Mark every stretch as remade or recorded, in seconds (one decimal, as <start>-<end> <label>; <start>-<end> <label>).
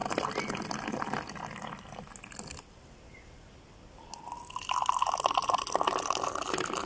0.0-6.9 recorded